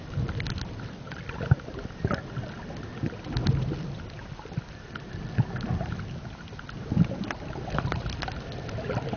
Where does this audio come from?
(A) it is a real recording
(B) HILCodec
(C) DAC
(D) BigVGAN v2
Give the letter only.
A